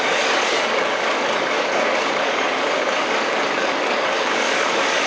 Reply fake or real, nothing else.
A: fake